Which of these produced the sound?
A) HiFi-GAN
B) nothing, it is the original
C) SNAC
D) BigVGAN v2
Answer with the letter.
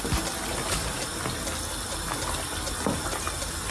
B